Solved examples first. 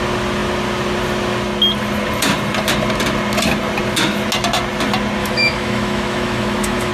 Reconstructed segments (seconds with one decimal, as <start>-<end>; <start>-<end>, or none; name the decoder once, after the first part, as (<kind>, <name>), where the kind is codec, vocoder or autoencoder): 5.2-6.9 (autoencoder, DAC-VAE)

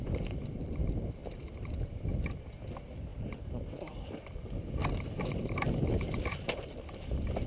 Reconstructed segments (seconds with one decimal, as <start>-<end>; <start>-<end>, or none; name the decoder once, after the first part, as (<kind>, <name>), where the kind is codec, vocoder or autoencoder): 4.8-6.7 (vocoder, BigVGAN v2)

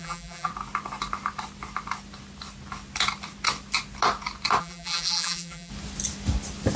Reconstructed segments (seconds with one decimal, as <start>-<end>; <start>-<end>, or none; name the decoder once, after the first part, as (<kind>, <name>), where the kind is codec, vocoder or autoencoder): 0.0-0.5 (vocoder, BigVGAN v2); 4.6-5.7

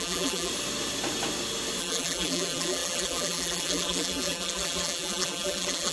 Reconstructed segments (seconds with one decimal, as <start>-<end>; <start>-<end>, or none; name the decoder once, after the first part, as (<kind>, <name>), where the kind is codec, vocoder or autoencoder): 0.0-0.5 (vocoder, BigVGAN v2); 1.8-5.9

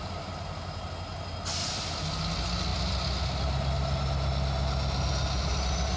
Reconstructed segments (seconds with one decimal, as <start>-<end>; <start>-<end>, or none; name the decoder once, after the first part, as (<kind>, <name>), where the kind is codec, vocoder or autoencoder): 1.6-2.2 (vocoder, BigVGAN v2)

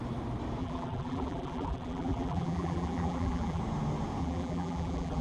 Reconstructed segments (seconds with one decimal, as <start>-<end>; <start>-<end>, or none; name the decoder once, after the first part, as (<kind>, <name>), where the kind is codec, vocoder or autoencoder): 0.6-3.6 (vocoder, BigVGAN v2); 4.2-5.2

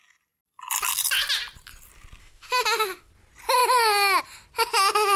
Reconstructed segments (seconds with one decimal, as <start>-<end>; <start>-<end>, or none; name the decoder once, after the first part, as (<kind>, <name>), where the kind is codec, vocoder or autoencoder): 2.2-3.1 (autoencoder, DAC-VAE)